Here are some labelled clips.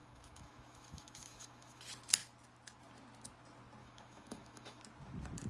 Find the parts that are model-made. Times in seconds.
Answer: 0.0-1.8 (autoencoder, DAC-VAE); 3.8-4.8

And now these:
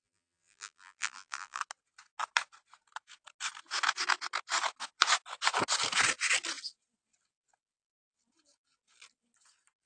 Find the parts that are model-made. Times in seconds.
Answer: 0.0-1.6 (vocoder, BigVGAN v2)

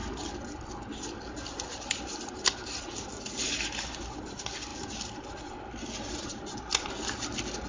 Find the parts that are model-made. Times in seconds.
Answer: none